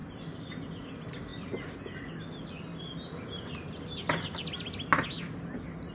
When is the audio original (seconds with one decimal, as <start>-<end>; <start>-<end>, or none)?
0.8-5.9